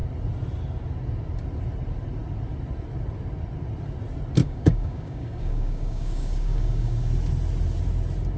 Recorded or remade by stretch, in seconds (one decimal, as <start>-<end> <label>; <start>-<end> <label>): 0.0-4.4 recorded; 4.4-7.1 remade; 7.1-8.4 recorded